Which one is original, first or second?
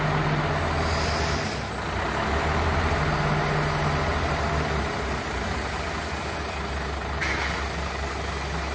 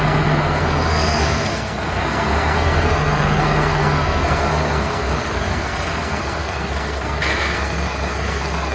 first